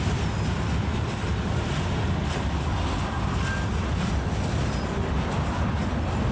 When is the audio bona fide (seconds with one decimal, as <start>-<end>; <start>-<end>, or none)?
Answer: 0.0-6.3